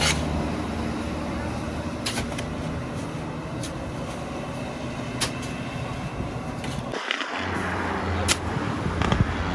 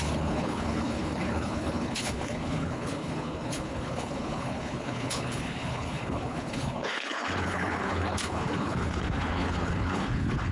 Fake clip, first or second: second